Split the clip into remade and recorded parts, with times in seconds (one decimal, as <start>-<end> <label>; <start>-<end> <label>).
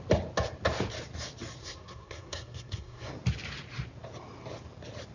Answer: 0.0-1.6 recorded; 1.6-3.1 remade; 3.1-5.1 recorded